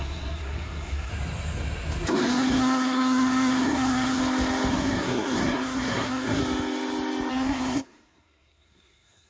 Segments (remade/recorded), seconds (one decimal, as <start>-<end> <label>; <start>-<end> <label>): 0.0-1.1 remade; 1.1-2.1 recorded; 2.1-4.2 remade; 4.2-4.7 recorded; 4.7-6.4 remade; 6.4-7.3 recorded; 7.3-9.3 remade